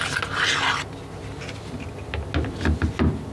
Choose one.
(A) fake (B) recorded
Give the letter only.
B